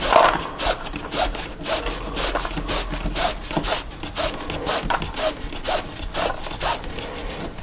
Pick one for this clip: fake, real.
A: real